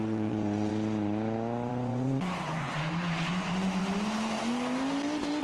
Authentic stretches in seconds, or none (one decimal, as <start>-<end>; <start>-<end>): 0.7-1.7; 2.7-3.3; 3.8-5.4